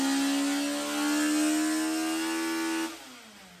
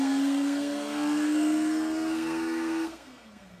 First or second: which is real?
first